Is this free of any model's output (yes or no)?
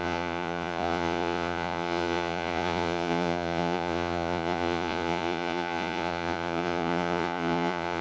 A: no